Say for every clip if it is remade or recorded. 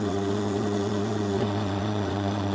remade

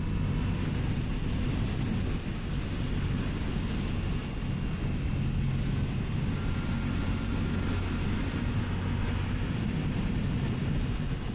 recorded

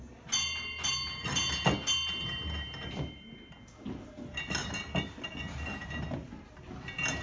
recorded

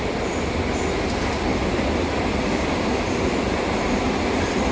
remade